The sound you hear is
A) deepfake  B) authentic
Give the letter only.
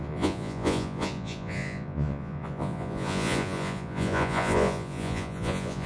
A